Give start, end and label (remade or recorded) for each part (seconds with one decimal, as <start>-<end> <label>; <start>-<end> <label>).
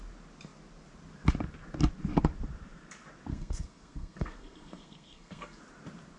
0.0-3.3 recorded; 3.3-5.6 remade; 5.6-6.2 recorded